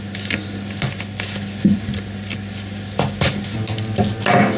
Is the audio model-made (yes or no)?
no